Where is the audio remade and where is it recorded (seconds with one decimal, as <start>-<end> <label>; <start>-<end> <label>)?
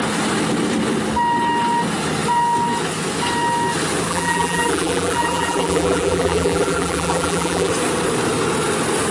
0.0-4.1 recorded; 4.1-7.7 remade; 7.7-9.1 recorded